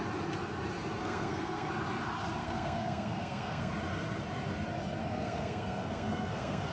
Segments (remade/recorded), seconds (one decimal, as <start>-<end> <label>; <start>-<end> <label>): 0.0-1.0 recorded; 1.0-1.7 remade; 1.7-2.4 recorded; 2.4-3.7 remade; 3.7-5.0 recorded; 5.0-6.7 remade